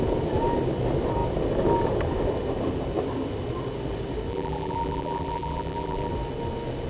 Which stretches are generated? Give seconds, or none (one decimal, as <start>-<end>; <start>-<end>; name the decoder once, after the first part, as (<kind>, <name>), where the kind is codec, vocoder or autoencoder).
4.3-6.1 (vocoder, BigVGAN v2)